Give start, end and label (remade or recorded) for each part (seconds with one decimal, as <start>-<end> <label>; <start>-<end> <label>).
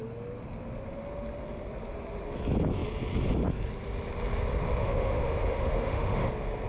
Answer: 0.0-4.8 recorded; 4.8-6.3 remade; 6.3-6.7 recorded